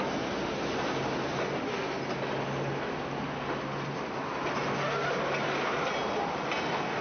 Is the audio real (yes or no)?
yes